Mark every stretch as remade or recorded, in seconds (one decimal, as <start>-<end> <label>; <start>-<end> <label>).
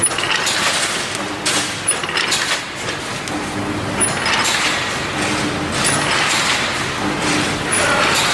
0.0-8.3 recorded